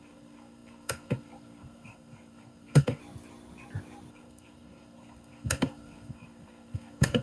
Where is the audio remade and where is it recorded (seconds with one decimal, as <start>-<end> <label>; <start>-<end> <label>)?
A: 0.0-3.0 remade; 3.0-4.1 recorded; 4.1-7.2 remade